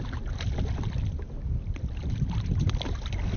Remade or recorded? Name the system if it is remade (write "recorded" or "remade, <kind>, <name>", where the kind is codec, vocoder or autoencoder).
recorded